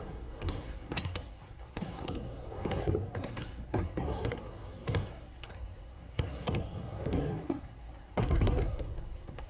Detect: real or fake fake